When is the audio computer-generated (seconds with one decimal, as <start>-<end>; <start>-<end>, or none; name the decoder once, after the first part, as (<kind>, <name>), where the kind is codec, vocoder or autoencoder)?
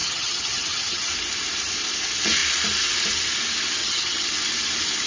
0.0-1.1 (vocoder, HiFi-GAN); 3.8-4.3